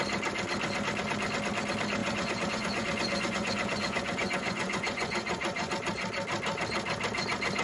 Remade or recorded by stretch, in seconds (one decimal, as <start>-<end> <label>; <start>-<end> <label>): 0.0-2.0 recorded; 2.0-5.7 remade; 5.7-7.6 recorded